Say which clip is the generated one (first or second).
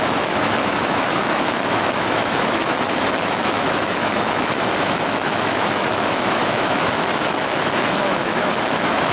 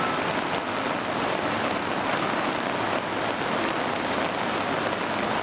first